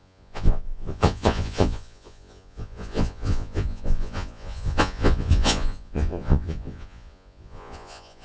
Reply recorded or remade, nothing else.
remade